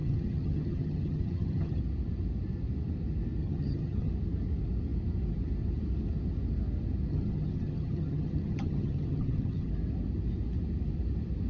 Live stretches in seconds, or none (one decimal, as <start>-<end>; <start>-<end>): 1.8-3.4; 4.1-7.1; 9.7-11.5